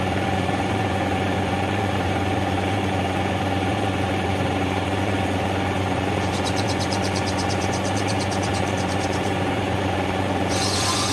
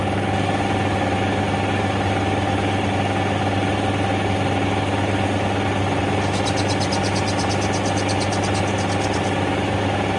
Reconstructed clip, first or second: first